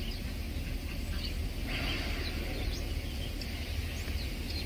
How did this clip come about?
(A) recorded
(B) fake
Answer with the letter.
A